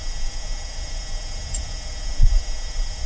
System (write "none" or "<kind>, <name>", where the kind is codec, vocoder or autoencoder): vocoder, Vocos